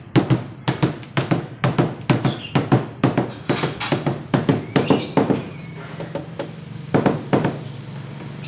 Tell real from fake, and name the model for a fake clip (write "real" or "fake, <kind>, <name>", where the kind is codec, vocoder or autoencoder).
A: real